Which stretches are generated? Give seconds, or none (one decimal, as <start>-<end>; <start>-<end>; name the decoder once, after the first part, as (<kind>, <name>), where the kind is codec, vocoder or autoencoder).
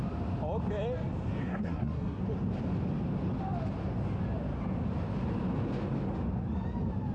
1.4-2.2 (codec, SNAC)